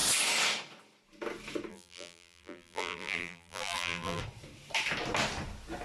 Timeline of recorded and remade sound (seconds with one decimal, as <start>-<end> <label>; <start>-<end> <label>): 0.0-1.7 recorded; 1.7-4.2 remade; 4.2-5.8 recorded